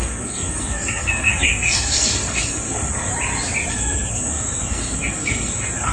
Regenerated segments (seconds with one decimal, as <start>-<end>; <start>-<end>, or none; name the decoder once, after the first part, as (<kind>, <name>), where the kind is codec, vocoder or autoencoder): 0.0-3.1 (codec, SNAC); 3.7-5.9